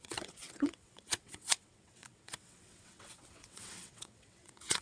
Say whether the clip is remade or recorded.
remade